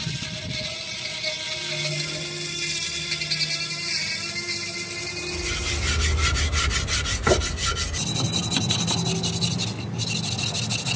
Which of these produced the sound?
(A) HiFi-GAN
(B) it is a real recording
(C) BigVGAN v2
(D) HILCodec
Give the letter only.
B